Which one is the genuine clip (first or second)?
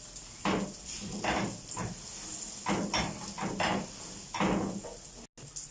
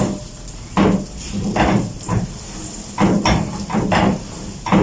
first